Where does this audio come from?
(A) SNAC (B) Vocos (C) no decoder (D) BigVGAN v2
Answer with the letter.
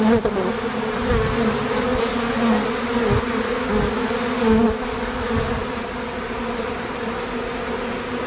C